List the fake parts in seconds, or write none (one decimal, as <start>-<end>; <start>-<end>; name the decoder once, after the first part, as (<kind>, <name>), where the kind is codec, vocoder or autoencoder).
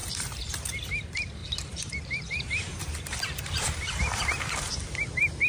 0.0-0.5 (vocoder, BigVGAN v2); 1.4-4.7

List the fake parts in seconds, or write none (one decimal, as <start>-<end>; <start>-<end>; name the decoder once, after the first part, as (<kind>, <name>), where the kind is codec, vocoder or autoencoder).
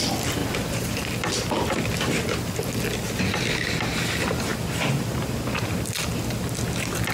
0.4-1.0 (vocoder, BigVGAN v2)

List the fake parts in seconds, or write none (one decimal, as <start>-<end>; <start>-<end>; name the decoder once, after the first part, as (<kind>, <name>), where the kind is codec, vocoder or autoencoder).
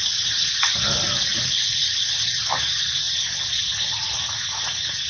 none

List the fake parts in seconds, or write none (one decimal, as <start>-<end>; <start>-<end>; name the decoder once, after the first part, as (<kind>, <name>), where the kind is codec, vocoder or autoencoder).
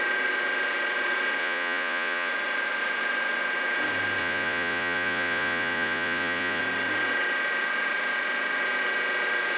1.4-2.3 (vocoder, Vocos); 4.2-6.6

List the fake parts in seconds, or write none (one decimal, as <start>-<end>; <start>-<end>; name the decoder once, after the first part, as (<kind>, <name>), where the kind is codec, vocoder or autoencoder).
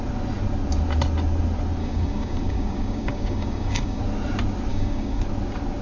1.8-4.0 (codec, DAC); 4.7-5.2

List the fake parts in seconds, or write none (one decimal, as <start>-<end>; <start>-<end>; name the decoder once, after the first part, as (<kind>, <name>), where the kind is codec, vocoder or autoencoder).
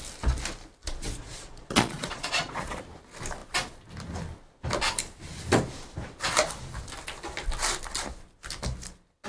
0.8-2.8 (vocoder, Vocos)